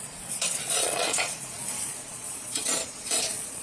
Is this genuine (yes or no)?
no